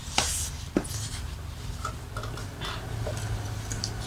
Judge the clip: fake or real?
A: real